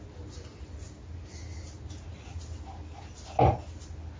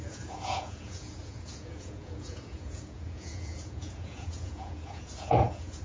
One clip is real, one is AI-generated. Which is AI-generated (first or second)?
second